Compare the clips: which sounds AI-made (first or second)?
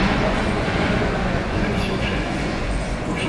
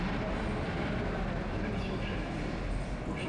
first